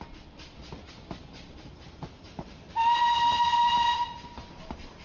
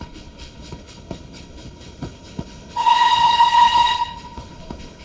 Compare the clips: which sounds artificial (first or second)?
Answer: second